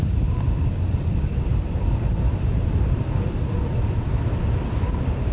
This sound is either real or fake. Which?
fake